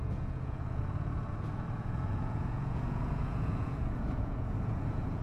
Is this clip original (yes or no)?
no